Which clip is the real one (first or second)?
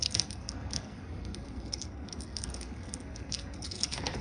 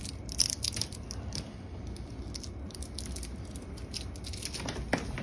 second